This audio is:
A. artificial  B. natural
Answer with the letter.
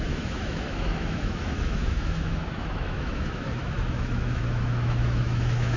A